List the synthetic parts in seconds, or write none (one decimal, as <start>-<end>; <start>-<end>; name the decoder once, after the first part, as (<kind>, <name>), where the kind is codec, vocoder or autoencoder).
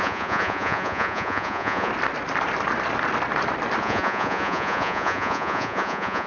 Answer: 0.0-1.9 (vocoder, Vocos); 3.8-6.3